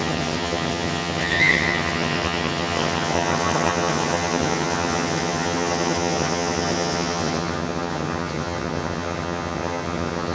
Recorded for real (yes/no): no